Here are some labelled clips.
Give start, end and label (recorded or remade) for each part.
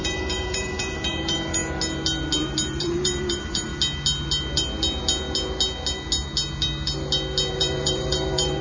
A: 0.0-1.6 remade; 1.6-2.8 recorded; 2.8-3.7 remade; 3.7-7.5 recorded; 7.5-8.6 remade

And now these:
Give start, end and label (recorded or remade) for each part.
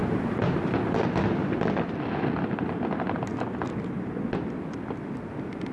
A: 0.0-5.7 recorded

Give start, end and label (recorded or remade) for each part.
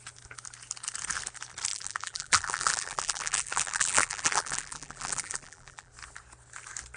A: 0.0-1.7 recorded; 1.7-5.9 remade; 5.9-7.0 recorded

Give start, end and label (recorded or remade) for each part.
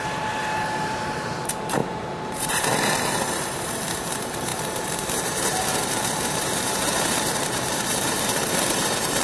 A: 0.0-9.2 remade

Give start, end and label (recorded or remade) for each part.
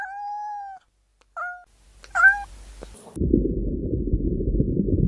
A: 0.0-5.1 recorded